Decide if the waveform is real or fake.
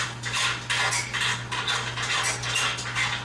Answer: real